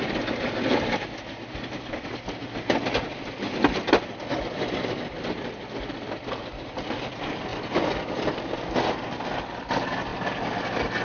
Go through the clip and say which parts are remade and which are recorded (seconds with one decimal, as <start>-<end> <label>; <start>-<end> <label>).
0.0-2.4 remade; 2.4-6.4 recorded; 6.4-7.5 remade; 7.5-9.4 recorded; 9.4-10.1 remade; 10.1-11.0 recorded